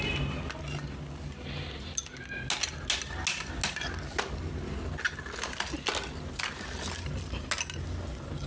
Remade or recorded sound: recorded